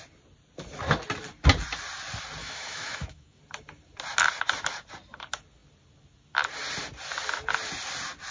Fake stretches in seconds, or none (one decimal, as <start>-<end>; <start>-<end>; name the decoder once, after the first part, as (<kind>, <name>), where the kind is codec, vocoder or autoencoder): 2.4-3.4 (autoencoder, DAC-VAE)